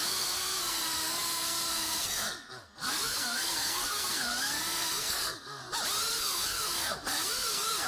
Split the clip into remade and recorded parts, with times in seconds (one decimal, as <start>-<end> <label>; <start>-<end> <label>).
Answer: 0.0-5.6 remade; 5.6-6.1 recorded; 6.1-7.9 remade